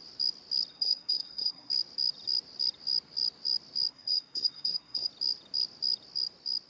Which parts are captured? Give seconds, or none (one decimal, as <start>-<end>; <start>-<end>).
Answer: 0.0-0.7; 1.7-3.9; 5.1-6.7

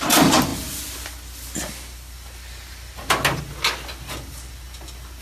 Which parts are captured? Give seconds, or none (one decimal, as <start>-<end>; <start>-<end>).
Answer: 0.0-5.2

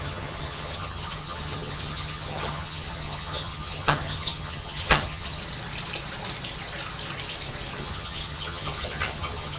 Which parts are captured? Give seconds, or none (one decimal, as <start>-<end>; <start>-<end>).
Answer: 5.4-7.8